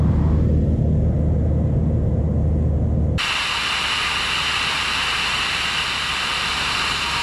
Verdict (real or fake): real